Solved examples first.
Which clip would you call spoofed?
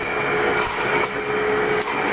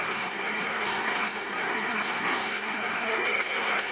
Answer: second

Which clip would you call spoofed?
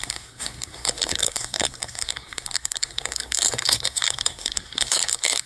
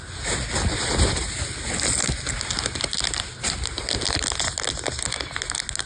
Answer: first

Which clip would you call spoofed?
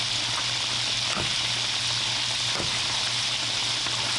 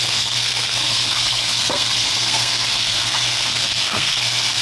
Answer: second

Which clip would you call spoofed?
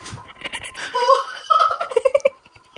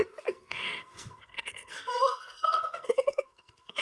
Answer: second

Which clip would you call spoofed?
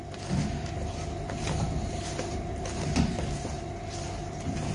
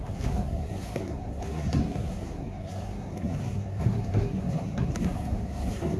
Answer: second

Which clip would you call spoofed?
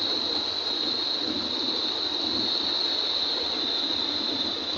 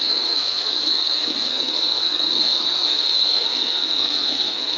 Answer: second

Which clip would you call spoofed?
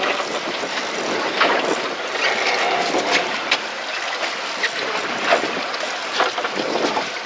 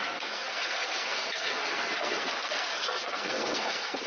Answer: second